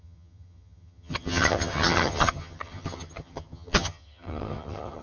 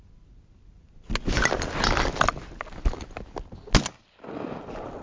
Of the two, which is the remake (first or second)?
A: first